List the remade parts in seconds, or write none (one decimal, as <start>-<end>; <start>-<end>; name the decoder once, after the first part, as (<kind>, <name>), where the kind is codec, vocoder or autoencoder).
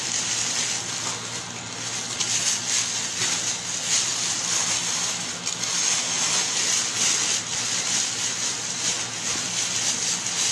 none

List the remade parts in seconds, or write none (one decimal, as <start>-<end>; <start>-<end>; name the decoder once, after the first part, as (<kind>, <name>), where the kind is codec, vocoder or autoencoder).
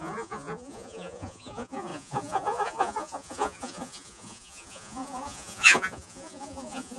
0.0-7.0 (vocoder, Vocos)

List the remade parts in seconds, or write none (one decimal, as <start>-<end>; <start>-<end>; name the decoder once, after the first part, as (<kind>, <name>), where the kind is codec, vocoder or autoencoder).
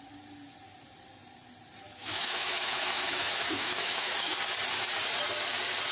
2.0-4.4 (autoencoder, DAC-VAE)